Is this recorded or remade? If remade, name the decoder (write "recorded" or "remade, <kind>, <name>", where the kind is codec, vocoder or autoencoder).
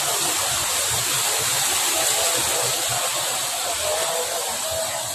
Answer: recorded